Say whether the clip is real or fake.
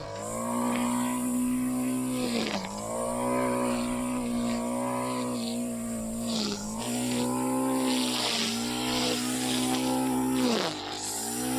real